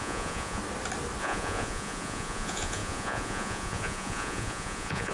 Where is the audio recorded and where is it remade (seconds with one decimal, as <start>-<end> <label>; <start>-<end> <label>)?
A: 0.0-0.6 remade; 0.6-1.2 recorded; 1.2-5.1 remade